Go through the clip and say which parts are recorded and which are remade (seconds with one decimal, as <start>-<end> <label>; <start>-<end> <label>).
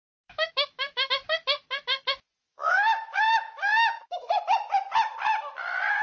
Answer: 0.0-1.1 remade; 1.1-2.4 recorded; 2.4-4.3 remade; 4.3-6.0 recorded